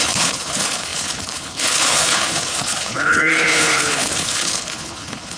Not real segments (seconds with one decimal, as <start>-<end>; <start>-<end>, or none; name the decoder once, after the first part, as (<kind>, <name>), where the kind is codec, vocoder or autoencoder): 0.0-5.4 (codec, HILCodec)